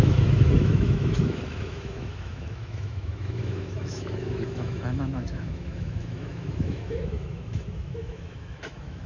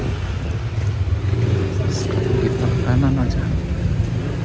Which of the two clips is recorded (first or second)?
second